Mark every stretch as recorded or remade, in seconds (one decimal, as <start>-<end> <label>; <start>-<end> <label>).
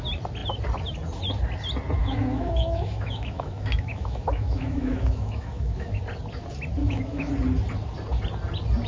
0.0-2.0 recorded; 2.0-6.0 remade; 6.0-6.8 recorded; 6.8-7.3 remade; 7.3-8.9 recorded